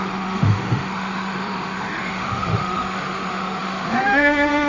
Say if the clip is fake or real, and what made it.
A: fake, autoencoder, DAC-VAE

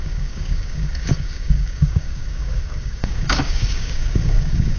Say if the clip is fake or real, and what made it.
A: fake, codec, DAC